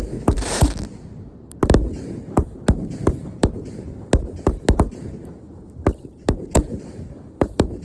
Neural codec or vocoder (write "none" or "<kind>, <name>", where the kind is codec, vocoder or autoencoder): vocoder, BigVGAN v2